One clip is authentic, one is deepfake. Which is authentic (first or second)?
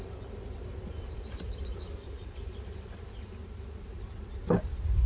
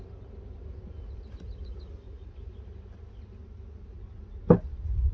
second